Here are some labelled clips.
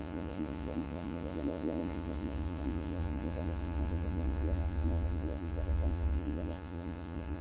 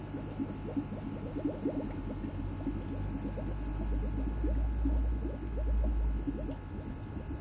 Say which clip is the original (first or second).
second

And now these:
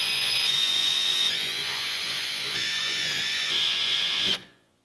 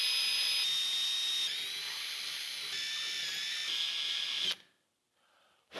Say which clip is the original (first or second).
second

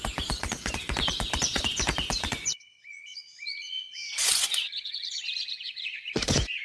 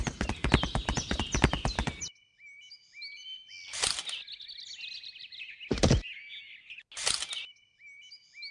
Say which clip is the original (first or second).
second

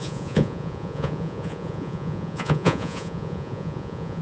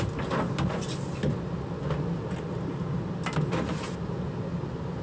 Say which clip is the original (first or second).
second